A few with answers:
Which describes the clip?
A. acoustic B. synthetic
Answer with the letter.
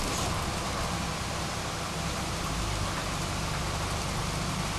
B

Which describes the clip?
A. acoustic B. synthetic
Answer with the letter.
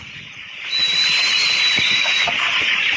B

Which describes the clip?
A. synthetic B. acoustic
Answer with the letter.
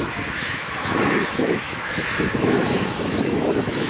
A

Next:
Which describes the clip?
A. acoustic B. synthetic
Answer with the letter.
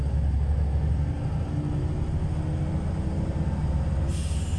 A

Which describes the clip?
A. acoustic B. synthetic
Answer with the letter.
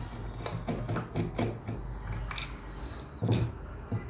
A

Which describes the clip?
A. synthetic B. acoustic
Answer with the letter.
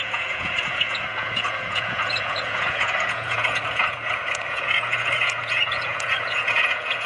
A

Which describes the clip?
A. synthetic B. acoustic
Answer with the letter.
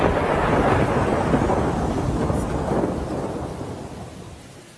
B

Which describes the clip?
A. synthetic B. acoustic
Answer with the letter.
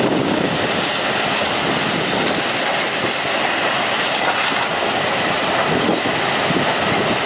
B